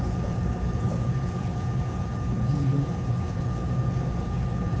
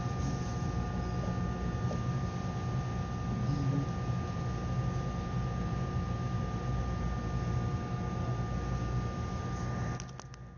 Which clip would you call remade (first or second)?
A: first